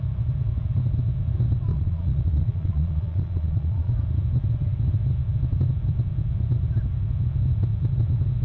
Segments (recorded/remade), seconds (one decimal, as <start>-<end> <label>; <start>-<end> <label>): 0.0-1.7 recorded; 1.7-3.9 remade; 3.9-8.4 recorded